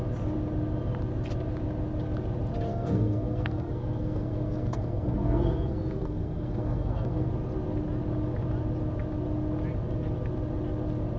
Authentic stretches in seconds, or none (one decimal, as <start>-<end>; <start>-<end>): 0.0-2.7; 7.3-11.2